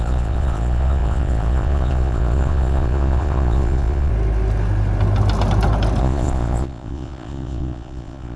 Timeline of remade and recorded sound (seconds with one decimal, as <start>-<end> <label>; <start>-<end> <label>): 0.0-4.1 remade; 4.1-6.0 recorded; 6.0-8.4 remade